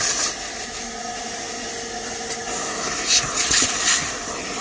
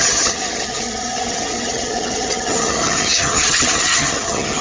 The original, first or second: first